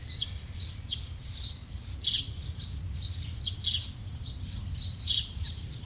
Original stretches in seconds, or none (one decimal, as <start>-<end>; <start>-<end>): 0.0-0.7; 1.6-4.4

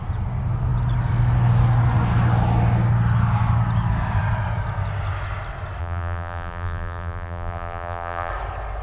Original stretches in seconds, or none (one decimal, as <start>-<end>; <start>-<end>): 0.0-5.8; 8.3-8.8

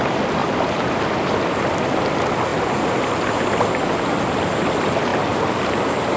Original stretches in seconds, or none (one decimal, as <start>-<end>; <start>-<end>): 0.0-0.4; 1.0-5.1

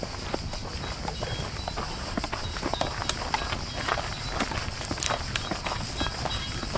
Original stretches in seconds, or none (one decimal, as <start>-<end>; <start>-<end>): 0.0-6.8

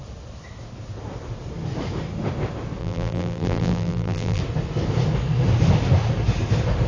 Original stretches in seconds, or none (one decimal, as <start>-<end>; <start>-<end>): 0.0-2.8; 4.4-6.9

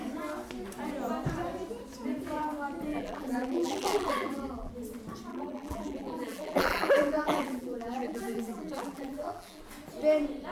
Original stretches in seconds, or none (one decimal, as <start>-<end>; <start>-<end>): 0.0-2.9; 4.7-5.3; 9.6-10.5